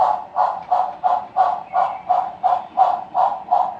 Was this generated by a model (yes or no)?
no